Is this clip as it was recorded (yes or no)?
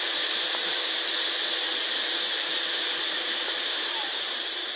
no